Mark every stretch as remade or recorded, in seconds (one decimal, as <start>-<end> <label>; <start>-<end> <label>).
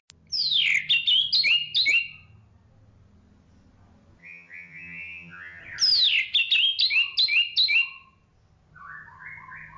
0.0-4.2 recorded; 4.2-5.6 remade; 5.6-9.8 recorded